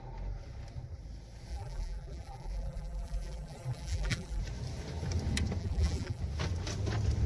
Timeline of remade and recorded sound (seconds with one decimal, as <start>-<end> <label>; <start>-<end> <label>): 0.0-1.5 recorded; 1.5-4.4 remade; 4.4-5.6 recorded; 5.6-6.2 remade; 6.2-7.3 recorded